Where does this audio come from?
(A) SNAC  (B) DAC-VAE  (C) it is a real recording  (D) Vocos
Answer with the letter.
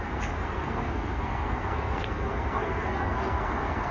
A